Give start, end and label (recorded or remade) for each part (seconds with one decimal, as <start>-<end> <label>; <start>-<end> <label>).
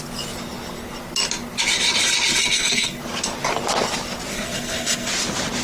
0.0-2.4 recorded; 2.4-3.0 remade; 3.0-4.3 recorded; 4.3-5.1 remade; 5.1-5.6 recorded